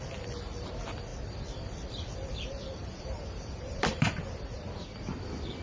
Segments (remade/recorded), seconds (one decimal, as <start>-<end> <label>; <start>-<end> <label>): 0.0-1.1 recorded; 1.1-4.1 remade; 4.1-5.6 recorded